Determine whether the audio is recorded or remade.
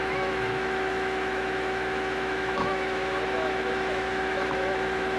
remade